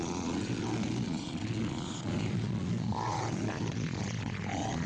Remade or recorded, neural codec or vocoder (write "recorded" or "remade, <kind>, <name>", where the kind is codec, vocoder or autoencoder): remade, vocoder, Vocos